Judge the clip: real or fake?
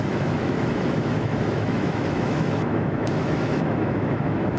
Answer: fake